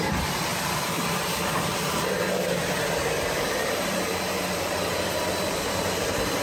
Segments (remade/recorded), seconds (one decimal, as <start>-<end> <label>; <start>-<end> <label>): 0.0-6.4 remade